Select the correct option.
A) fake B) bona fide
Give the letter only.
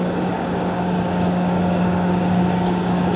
A